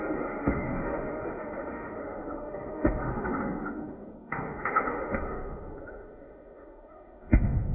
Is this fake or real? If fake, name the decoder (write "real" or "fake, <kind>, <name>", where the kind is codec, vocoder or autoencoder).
fake, autoencoder, DAC-VAE